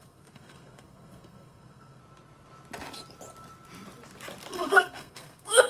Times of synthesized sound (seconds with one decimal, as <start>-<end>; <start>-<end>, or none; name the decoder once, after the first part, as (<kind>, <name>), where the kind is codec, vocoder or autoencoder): 0.0-2.0 (codec, SNAC); 4.5-5.7